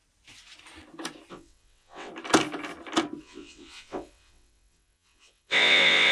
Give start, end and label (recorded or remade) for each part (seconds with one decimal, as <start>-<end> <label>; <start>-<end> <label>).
0.0-1.3 recorded; 1.3-2.1 remade; 2.1-3.2 recorded; 3.2-6.1 remade